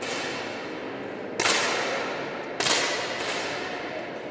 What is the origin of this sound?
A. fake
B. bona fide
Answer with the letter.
B